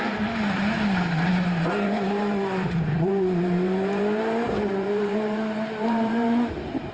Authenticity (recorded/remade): remade